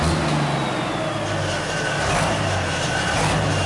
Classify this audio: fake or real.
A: real